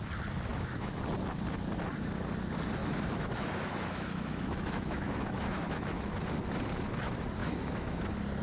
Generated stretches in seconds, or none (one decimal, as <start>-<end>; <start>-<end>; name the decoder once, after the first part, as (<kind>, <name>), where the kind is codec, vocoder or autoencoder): 0.5-1.0 (autoencoder, DAC-VAE); 2.8-6.1; 7.4-8.0